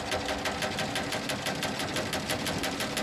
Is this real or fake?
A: real